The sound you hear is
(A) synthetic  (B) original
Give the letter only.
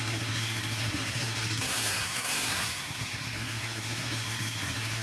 A